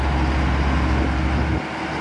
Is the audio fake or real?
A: real